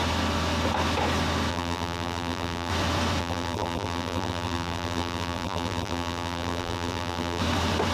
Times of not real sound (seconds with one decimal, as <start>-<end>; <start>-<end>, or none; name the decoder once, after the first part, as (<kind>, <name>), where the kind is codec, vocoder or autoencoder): 1.5-2.7 (vocoder, BigVGAN v2); 3.2-7.4